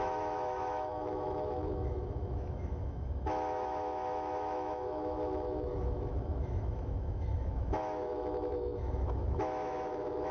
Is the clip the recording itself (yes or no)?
no